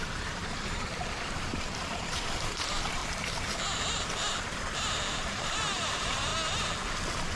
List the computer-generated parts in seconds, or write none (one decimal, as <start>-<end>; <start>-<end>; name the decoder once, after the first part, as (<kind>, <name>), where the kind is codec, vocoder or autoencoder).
0.0-3.0 (vocoder, BigVGAN v2); 5.1-6.3